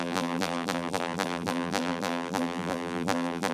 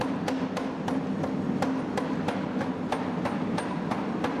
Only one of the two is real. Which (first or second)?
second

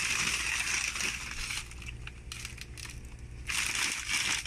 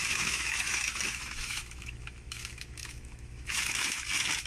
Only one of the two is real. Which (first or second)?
first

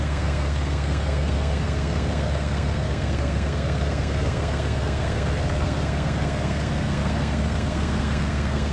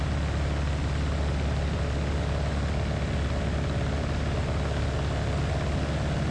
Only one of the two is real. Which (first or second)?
second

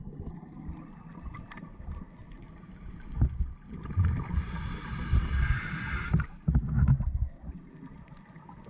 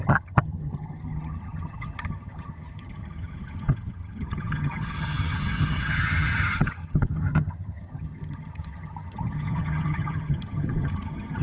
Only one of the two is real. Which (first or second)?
first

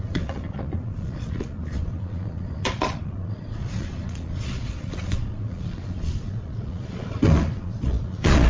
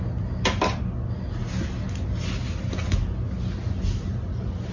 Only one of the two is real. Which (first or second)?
second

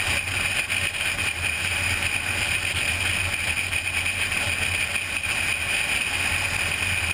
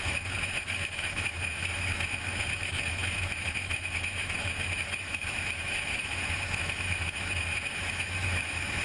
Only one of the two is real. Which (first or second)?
first